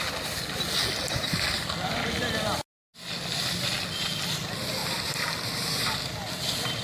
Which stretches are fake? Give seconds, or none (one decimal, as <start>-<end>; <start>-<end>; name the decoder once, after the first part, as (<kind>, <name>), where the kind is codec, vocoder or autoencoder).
none